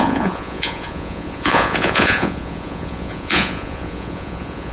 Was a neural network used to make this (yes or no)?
yes